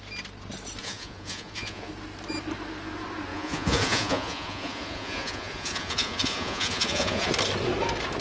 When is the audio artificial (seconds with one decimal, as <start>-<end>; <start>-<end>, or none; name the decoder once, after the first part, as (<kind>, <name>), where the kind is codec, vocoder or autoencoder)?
0.8-1.9 (vocoder, Vocos); 3.3-7.3